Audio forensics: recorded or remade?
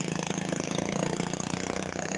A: remade